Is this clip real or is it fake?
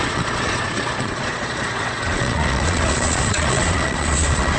fake